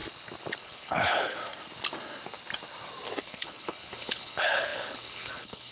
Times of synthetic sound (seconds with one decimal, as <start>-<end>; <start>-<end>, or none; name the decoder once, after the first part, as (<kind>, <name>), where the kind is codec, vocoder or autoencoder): 0.6-1.4 (codec, HILCodec); 3.2-5.7